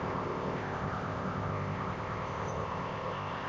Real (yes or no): no